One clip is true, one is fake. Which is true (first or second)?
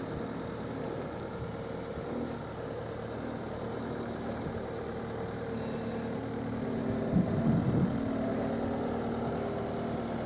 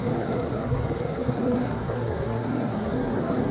first